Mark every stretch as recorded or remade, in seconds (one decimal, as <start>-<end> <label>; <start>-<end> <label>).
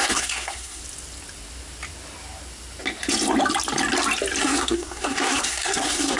0.0-0.8 remade; 0.8-4.4 recorded; 4.4-6.2 remade